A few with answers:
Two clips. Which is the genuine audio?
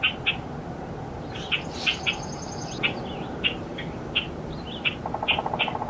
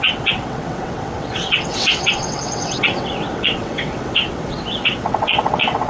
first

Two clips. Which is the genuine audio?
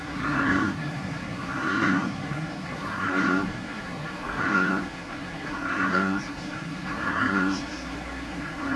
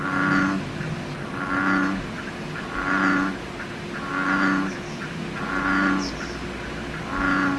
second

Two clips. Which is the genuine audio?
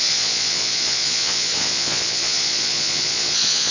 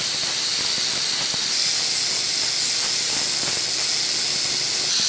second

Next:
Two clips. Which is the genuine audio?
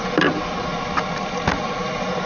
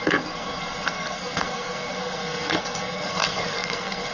first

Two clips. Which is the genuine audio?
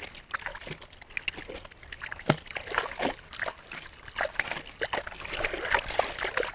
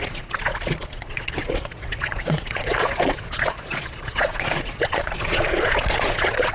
first